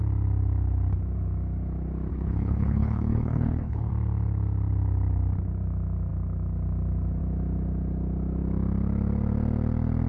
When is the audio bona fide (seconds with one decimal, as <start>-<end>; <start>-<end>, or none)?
0.0-2.1; 3.9-10.1